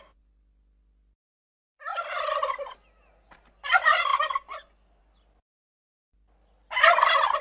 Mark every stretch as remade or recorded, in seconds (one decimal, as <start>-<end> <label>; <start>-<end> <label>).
0.0-7.4 recorded